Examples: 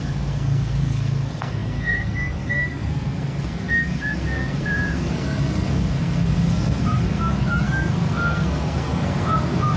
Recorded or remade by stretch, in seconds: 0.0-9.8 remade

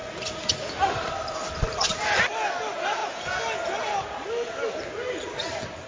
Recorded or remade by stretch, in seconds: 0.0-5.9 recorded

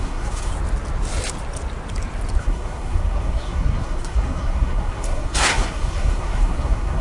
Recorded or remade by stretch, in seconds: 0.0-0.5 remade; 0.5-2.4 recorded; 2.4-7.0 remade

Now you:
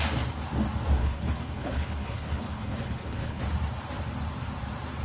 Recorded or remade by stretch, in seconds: 0.0-1.0 recorded; 1.0-3.4 remade; 3.4-5.0 recorded